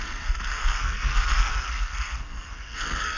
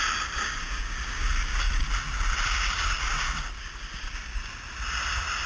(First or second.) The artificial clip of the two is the first